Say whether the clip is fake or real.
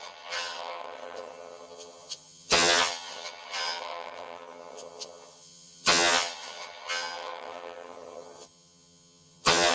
fake